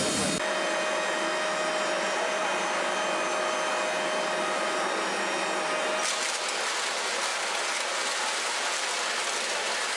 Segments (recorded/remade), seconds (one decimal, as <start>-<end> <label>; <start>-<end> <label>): 0.0-10.0 recorded